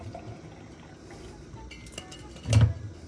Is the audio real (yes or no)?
yes